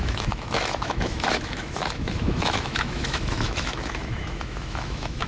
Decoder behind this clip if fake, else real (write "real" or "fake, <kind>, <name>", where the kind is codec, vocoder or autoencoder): fake, autoencoder, DAC-VAE